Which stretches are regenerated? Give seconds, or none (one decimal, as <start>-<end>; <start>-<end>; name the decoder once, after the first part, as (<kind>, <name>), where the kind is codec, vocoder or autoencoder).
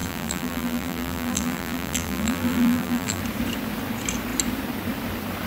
0.0-3.2 (vocoder, BigVGAN v2)